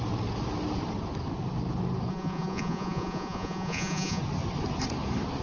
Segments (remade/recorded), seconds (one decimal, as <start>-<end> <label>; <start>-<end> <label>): 0.0-2.1 recorded; 2.1-4.2 remade; 4.2-5.4 recorded